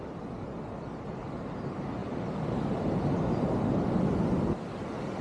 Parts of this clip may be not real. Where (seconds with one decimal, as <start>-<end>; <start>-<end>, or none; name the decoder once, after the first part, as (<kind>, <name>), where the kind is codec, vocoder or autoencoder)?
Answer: none